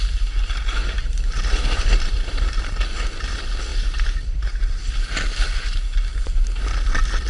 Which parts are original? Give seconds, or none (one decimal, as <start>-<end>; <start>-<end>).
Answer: 0.0-0.8; 2.6-3.7; 4.9-7.3